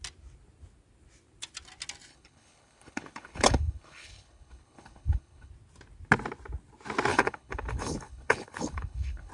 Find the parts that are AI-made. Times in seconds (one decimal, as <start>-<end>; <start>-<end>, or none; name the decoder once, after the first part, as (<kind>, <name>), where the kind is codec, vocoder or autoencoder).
2.1-5.5 (codec, HILCodec); 7.1-9.3